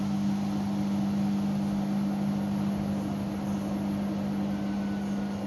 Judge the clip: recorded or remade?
recorded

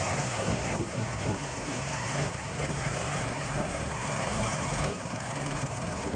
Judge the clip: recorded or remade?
remade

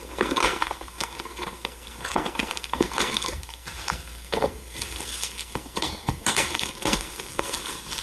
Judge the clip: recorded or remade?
remade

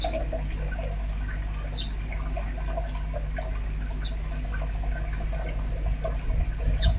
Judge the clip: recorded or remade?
recorded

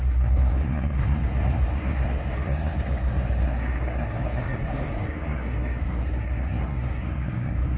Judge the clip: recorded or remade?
remade